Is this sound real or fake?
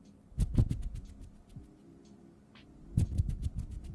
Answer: real